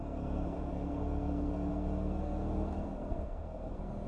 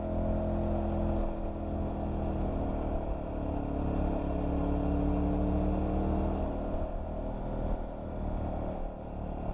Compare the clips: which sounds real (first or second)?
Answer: second